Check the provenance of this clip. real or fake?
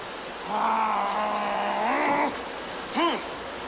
real